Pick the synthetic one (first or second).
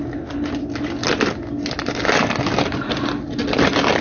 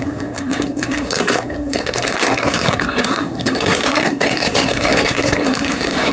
second